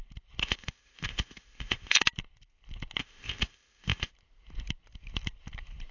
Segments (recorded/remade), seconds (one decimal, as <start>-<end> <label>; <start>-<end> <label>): 0.0-0.4 recorded; 0.4-2.0 remade; 2.0-3.0 recorded; 3.0-4.1 remade; 4.1-5.9 recorded